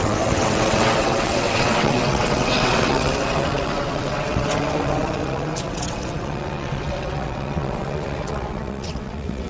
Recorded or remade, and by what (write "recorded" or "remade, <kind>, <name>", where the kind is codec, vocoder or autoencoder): remade, vocoder, WaveNeXt